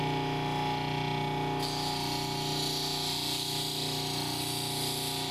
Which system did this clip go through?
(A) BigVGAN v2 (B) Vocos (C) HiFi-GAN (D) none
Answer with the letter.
D